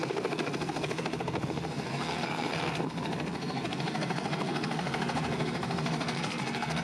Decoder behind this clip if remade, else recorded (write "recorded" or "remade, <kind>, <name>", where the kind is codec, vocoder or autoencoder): remade, codec, SNAC